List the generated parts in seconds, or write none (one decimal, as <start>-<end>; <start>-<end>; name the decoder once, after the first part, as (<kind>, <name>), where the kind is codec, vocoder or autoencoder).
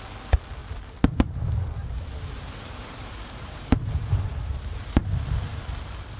0.6-1.4 (vocoder, BigVGAN v2); 1.8-4.7